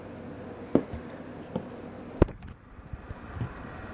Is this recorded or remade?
recorded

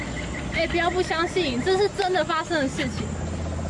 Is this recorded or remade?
recorded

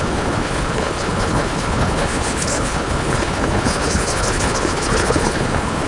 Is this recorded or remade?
remade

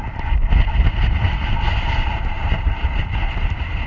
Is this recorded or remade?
recorded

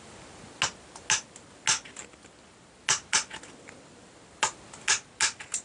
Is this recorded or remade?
recorded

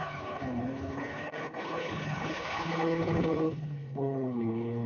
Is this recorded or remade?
remade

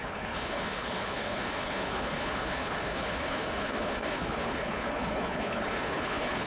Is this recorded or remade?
remade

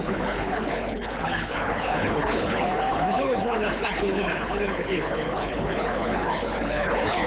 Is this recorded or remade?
remade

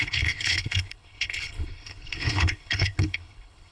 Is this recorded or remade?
remade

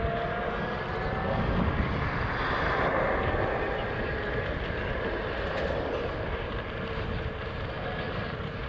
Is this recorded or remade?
recorded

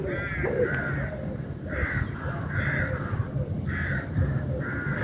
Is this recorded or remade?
recorded